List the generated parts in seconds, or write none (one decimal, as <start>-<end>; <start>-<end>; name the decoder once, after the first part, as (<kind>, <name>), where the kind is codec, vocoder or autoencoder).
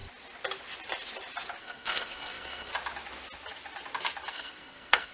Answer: 1.6-2.7 (codec, SNAC); 4.3-5.1